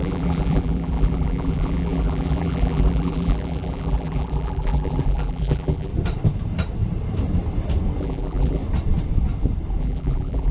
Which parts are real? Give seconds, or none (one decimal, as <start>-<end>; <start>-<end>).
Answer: 5.9-8.0; 8.6-9.8